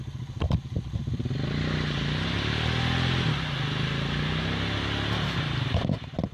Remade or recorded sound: recorded